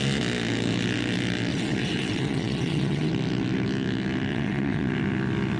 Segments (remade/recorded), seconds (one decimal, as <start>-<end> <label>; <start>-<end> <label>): 0.0-1.5 recorded; 1.5-3.1 remade; 3.1-4.3 recorded; 4.3-4.9 remade; 4.9-5.6 recorded